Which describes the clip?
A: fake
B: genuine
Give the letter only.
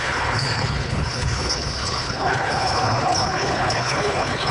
A